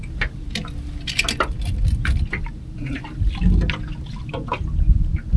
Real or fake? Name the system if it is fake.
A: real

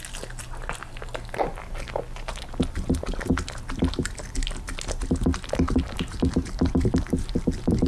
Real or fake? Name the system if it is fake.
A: real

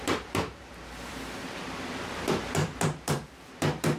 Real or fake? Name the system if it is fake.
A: fake, vocoder, BigVGAN v2